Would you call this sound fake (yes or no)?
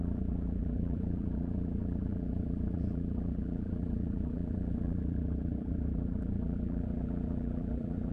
yes